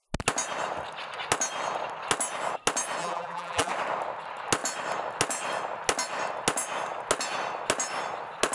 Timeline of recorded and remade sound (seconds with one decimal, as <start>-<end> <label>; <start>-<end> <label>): 0.0-3.0 recorded; 3.0-3.7 remade; 3.7-8.5 recorded